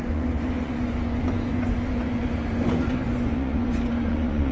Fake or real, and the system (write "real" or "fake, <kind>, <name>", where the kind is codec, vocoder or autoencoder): fake, vocoder, Vocos